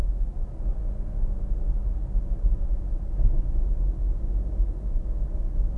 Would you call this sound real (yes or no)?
yes